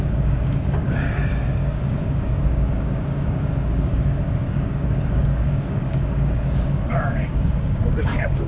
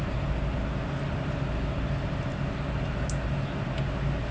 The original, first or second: second